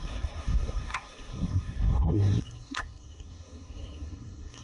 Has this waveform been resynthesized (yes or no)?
yes